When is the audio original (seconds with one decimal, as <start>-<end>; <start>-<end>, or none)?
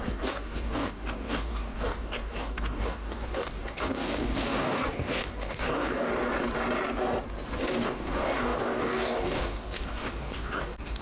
6.1-7.7